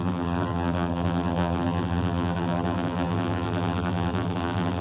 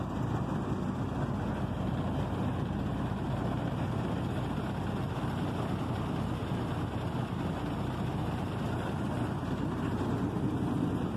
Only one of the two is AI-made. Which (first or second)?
first